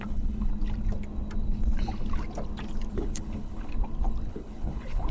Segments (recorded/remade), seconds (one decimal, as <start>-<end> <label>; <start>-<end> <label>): 0.0-0.5 remade; 0.5-2.9 recorded; 2.9-3.7 remade; 3.7-4.3 recorded; 4.3-5.1 remade